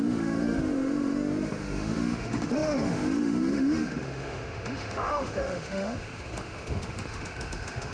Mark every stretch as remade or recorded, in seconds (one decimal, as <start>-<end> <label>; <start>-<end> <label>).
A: 0.0-7.9 remade